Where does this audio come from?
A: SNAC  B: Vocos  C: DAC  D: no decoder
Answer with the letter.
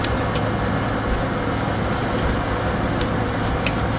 D